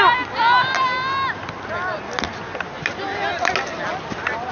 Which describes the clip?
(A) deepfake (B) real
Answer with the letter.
B